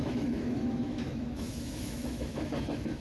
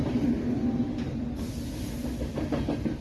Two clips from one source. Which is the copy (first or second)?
first